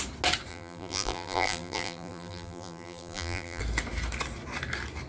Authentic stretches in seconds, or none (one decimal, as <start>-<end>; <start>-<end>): 0.0-0.5; 3.6-5.1